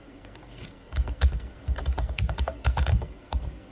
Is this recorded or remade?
remade